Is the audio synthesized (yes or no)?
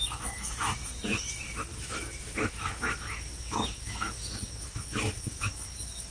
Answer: yes